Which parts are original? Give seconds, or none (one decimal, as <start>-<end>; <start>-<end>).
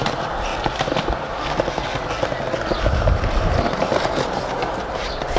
0.5-3.0